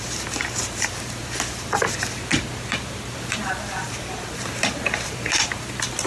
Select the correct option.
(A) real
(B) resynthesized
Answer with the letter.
B